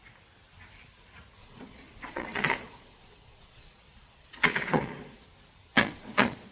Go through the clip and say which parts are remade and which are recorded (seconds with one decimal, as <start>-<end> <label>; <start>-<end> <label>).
0.0-1.4 recorded; 1.4-5.3 remade; 5.3-5.7 recorded; 5.7-6.5 remade